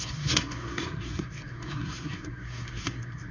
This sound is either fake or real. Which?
fake